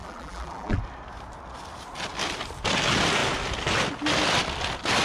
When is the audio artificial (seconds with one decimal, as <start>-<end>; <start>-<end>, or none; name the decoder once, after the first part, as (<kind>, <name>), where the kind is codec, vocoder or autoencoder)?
0.0-0.8 (vocoder, BigVGAN v2)